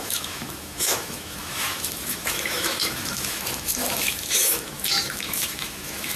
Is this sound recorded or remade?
remade